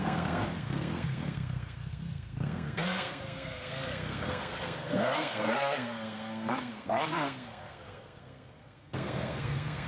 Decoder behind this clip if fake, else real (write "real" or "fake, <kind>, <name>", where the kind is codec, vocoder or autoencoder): fake, codec, SNAC